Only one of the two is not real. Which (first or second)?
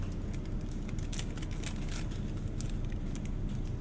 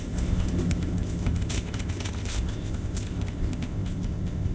second